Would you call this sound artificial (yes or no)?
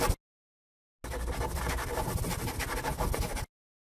no